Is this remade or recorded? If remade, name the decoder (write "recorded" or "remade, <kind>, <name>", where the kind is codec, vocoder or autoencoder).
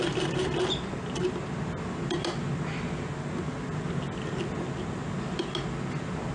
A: recorded